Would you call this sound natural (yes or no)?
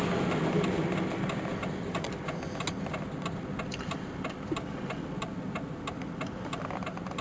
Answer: yes